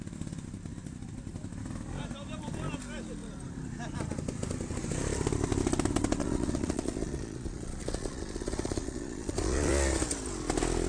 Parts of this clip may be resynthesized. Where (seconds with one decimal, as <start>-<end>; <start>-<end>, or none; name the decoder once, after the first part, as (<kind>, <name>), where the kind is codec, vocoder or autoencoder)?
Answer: 6.2-9.7 (vocoder, Vocos)